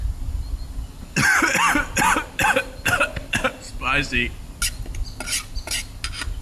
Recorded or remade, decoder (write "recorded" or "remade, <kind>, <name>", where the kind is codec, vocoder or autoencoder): recorded